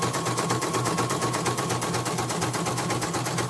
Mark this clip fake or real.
real